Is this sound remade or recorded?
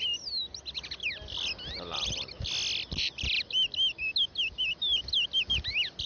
recorded